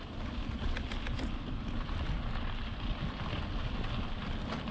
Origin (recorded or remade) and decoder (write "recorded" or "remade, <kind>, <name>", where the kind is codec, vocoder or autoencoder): recorded